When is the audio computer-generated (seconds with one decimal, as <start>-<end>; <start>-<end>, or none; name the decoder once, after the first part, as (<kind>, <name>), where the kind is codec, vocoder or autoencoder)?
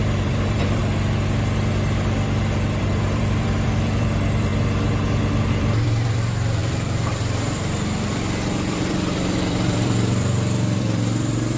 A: 0.0-0.8 (vocoder, BigVGAN v2); 1.7-4.5; 5.5-11.6